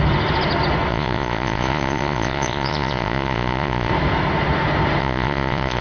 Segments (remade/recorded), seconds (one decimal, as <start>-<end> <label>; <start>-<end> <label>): 0.0-0.9 recorded; 0.9-3.9 remade; 3.9-5.0 recorded; 5.0-5.8 remade